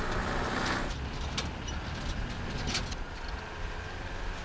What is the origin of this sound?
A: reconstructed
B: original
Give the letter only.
B